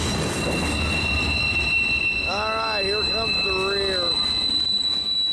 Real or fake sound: real